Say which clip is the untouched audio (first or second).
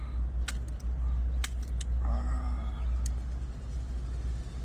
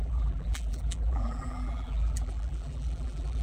first